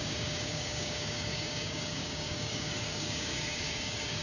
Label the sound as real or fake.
fake